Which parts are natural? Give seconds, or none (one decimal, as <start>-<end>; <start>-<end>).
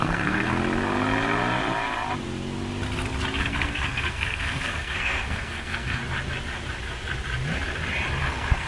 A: 0.6-3.4; 6.0-8.2